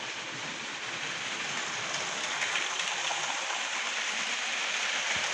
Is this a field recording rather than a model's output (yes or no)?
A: no